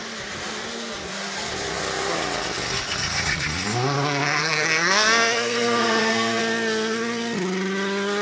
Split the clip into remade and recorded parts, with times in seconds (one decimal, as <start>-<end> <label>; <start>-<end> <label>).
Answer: 0.0-4.4 recorded; 4.4-6.4 remade; 6.4-8.2 recorded